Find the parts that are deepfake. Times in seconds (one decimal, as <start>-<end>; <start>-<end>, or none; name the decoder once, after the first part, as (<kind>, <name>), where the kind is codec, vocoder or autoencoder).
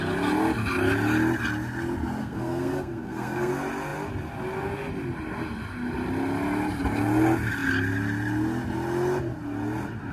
2.2-3.5 (codec, SNAC)